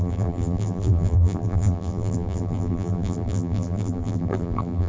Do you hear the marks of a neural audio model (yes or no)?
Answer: yes